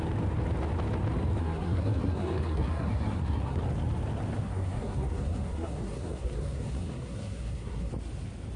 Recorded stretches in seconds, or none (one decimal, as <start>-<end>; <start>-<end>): 0.0-1.4; 3.6-4.4; 7.9-8.6